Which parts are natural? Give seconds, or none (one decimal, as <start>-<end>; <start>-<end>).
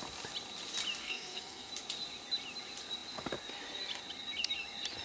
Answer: 0.0-1.0; 1.7-5.0